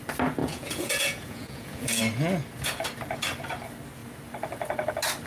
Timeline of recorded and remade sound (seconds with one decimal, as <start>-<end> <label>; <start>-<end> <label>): 0.0-0.4 recorded; 0.4-2.0 remade; 2.0-5.3 recorded